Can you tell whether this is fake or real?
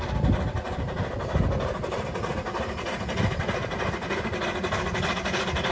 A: real